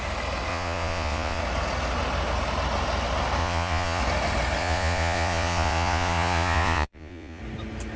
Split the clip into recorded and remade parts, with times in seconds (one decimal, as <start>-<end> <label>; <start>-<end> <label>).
0.0-0.5 recorded; 0.5-1.4 remade; 1.4-3.4 recorded; 3.4-4.0 remade; 4.0-4.6 recorded; 4.6-7.4 remade; 7.4-8.0 recorded